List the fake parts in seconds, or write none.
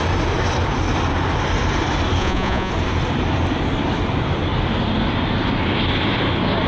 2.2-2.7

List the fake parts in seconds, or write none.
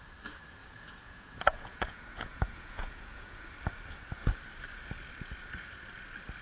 0.6-3.5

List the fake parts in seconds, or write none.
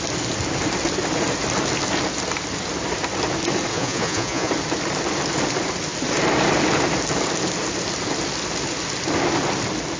3.7-4.5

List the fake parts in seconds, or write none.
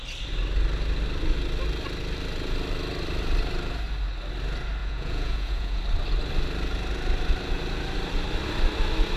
4.8-5.8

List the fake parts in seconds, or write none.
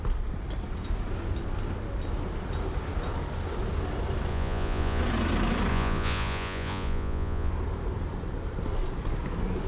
4.3-5.0; 5.7-7.5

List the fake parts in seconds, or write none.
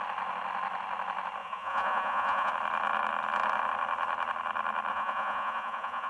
1.4-2.5; 4.9-6.1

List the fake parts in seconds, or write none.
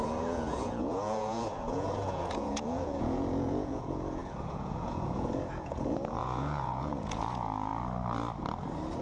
0.0-7.7